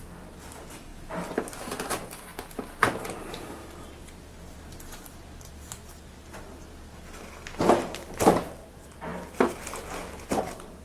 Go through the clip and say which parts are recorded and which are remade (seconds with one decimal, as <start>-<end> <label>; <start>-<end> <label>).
0.0-0.9 recorded; 0.9-1.9 remade; 1.9-10.8 recorded